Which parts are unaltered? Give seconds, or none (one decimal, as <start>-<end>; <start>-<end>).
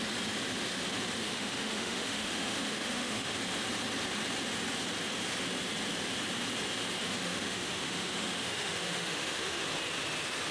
0.0-1.2; 3.4-7.0; 9.6-10.5